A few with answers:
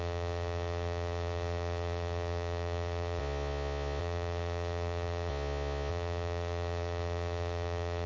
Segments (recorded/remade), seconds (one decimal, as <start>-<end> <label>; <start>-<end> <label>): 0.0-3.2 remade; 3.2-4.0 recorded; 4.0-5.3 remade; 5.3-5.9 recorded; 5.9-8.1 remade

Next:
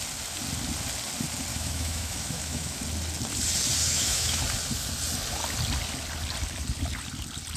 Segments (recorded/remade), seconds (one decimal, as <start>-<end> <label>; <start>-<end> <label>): 0.0-1.5 recorded; 1.5-2.8 remade; 2.8-3.8 recorded; 3.8-4.4 remade; 4.4-7.6 recorded

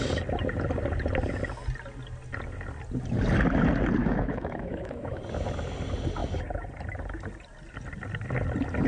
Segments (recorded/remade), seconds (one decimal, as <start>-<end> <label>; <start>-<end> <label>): 0.0-4.0 recorded; 4.0-5.2 remade; 5.2-8.9 recorded

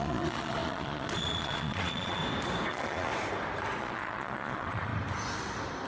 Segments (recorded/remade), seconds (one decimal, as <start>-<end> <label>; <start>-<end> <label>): 0.0-2.2 remade; 2.2-2.7 recorded; 2.7-3.1 remade; 3.1-3.8 recorded; 3.8-4.9 remade; 4.9-5.9 recorded

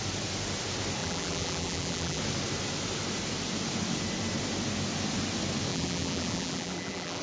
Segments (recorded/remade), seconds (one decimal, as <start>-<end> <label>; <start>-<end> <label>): 0.0-1.0 recorded; 1.0-2.2 remade; 2.2-5.7 recorded; 5.7-7.2 remade

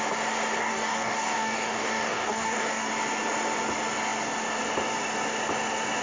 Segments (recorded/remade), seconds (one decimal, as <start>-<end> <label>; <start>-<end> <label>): 0.0-0.6 recorded; 0.6-2.9 remade; 2.9-6.0 recorded

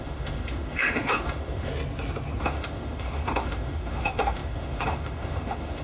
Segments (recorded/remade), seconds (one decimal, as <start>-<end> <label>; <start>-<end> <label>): 0.0-1.7 remade; 1.7-2.4 recorded; 2.4-5.8 remade